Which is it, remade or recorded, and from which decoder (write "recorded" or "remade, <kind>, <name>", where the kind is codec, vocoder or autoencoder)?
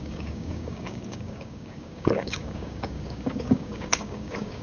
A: remade, codec, DAC